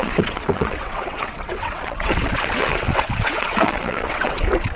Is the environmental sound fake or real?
fake